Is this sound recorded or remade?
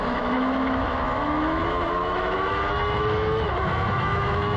remade